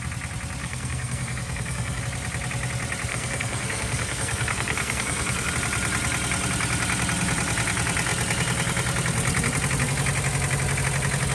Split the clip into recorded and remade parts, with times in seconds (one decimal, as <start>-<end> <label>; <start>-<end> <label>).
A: 0.0-0.6 recorded; 0.6-2.0 remade; 2.0-3.1 recorded; 3.1-5.5 remade; 5.5-11.3 recorded